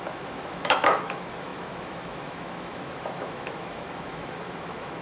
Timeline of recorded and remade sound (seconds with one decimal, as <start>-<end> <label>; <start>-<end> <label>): 0.0-5.0 remade